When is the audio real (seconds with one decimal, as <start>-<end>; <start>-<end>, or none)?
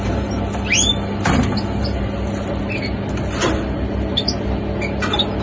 0.0-5.4